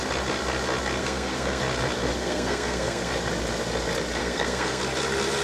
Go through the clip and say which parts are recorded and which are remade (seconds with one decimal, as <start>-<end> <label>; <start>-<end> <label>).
0.0-1.0 recorded; 1.0-1.6 remade; 1.6-2.1 recorded; 2.1-3.1 remade; 3.1-4.2 recorded; 4.2-4.8 remade; 4.8-5.4 recorded